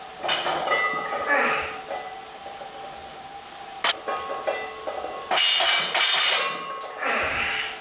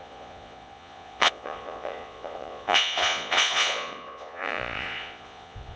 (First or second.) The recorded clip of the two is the first